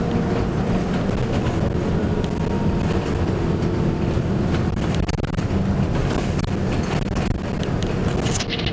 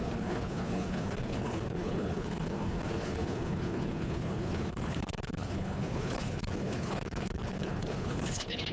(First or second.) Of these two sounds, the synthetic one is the second